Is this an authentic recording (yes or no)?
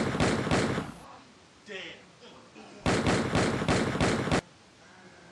yes